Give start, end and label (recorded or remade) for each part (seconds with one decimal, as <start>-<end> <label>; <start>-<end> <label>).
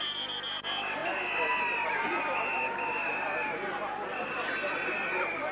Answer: 0.0-5.5 recorded